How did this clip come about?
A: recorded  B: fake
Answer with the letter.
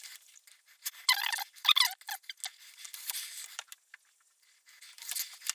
A